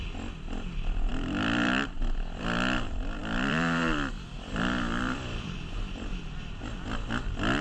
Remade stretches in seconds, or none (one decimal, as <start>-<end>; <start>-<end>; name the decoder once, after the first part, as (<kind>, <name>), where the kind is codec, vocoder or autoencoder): 1.1-2.4 (vocoder, BigVGAN v2); 3.2-7.1